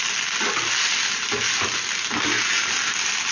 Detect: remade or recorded recorded